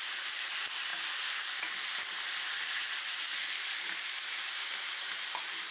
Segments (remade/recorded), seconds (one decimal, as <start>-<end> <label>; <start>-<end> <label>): 0.0-5.7 recorded